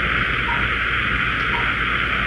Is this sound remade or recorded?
recorded